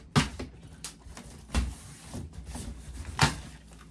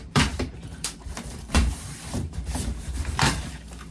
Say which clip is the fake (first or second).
second